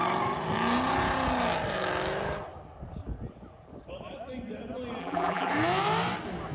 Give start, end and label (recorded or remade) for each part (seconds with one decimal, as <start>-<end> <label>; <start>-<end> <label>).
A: 0.0-5.0 recorded; 5.0-5.5 remade; 5.5-6.5 recorded